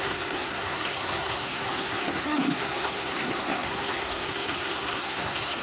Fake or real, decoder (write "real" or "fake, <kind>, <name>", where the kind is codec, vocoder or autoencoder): fake, codec, SNAC